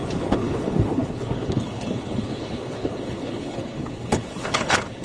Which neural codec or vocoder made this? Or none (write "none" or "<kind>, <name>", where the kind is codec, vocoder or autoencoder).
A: codec, HILCodec